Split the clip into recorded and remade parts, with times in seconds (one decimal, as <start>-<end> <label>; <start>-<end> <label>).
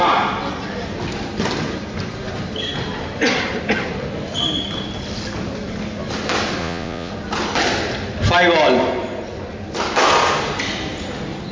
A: 0.0-6.6 recorded; 6.6-7.1 remade; 7.1-11.5 recorded